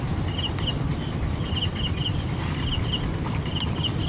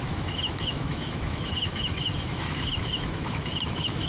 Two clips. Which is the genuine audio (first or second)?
first